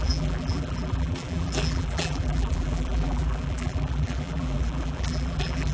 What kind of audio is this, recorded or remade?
remade